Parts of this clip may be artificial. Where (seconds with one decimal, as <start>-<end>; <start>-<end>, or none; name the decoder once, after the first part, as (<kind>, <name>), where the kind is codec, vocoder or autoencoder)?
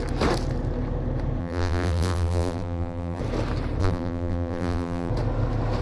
1.4-3.2 (vocoder, BigVGAN v2); 3.8-5.1